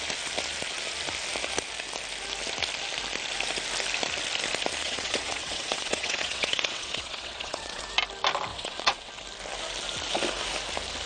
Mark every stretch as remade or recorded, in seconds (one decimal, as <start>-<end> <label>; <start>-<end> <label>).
0.0-4.8 recorded; 4.8-7.8 remade; 7.8-8.5 recorded; 8.5-9.1 remade; 9.1-11.1 recorded